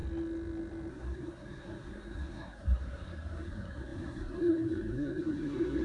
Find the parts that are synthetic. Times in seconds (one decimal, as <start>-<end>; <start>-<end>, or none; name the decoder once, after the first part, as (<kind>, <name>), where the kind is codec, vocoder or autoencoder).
0.9-5.8 (codec, SNAC)